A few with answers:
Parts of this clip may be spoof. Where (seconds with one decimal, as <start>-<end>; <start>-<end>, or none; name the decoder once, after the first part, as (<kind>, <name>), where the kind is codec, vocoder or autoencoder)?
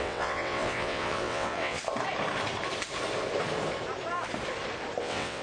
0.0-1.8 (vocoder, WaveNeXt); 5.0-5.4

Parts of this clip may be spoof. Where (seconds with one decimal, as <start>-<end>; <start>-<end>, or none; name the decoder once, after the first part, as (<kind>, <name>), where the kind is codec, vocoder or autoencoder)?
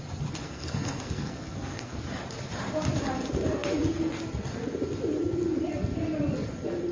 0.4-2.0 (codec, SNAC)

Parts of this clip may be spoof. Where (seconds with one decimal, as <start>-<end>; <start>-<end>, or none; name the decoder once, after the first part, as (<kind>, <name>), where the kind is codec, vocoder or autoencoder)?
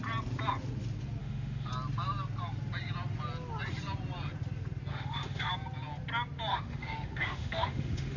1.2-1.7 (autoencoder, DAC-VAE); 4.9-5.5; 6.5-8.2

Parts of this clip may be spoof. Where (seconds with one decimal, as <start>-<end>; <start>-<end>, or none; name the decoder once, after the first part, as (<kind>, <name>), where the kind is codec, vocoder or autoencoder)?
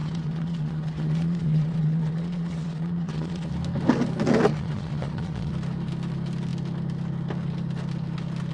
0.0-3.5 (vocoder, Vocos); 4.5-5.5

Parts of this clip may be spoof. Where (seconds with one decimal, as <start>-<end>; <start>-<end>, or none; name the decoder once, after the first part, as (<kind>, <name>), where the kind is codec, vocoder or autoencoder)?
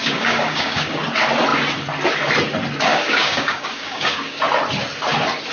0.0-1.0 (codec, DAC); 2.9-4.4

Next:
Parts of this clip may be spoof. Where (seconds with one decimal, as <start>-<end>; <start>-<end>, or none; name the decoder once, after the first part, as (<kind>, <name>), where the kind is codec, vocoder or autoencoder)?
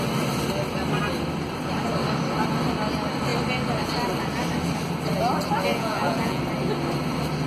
5.7-6.4 (vocoder, Vocos)